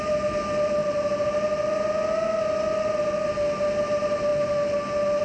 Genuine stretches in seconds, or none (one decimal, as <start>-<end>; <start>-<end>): 0.0-5.2